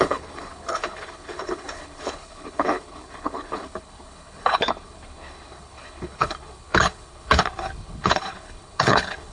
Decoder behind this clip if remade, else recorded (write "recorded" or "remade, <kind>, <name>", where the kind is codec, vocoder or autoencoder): remade, codec, HILCodec